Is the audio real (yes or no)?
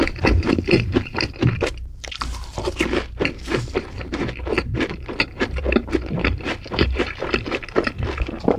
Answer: no